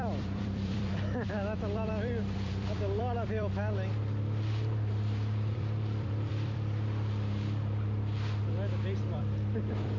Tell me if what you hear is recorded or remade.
remade